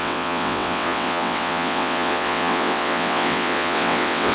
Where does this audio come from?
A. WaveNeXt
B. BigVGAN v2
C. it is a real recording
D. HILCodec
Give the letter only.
A